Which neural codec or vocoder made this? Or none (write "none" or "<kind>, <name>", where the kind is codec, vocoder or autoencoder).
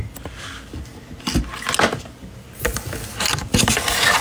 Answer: none